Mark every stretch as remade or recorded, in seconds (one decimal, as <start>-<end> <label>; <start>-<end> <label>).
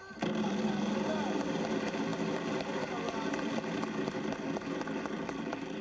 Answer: 0.0-5.8 recorded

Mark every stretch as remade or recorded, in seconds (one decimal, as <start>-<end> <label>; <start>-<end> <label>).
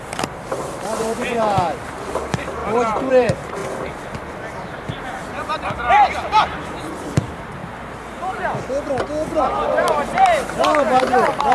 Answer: 0.0-2.6 remade; 2.6-3.1 recorded; 3.1-3.6 remade; 3.6-4.7 recorded; 4.7-7.6 remade; 7.6-9.4 recorded; 9.4-11.5 remade